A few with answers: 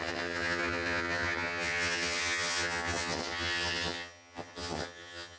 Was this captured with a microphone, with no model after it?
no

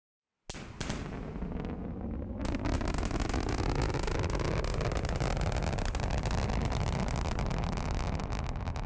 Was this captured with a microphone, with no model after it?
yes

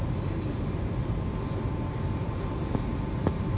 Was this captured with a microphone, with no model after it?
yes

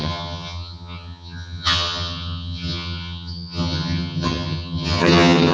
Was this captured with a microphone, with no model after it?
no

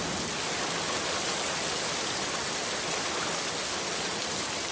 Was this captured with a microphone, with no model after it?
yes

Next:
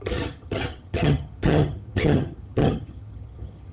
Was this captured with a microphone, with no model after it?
no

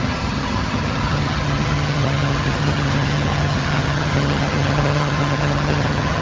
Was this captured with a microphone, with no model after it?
no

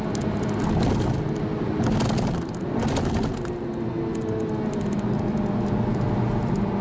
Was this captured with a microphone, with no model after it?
yes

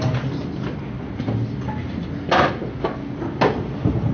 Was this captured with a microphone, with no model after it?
yes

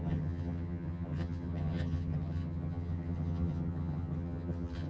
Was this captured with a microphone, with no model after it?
no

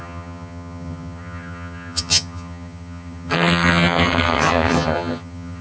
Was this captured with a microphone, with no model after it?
no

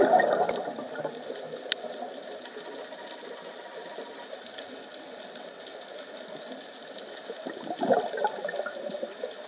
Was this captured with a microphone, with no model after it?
yes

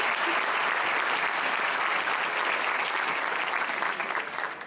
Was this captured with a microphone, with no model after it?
yes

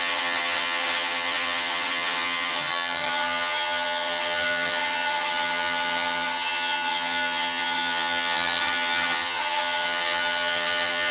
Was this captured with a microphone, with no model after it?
no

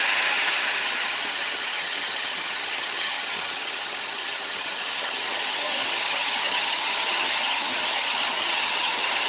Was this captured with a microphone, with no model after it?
no